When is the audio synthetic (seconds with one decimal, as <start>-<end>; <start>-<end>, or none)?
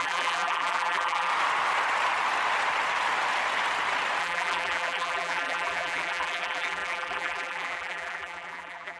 0.0-1.3; 4.2-9.0